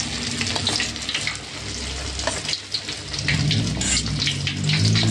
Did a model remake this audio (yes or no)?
no